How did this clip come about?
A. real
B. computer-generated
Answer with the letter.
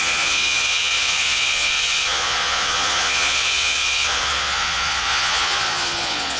B